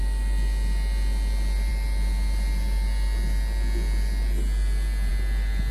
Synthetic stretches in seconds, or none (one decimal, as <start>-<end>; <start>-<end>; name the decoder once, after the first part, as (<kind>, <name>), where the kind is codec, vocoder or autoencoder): none